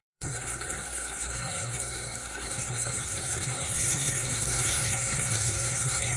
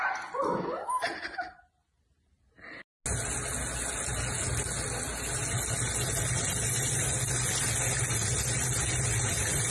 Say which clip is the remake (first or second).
first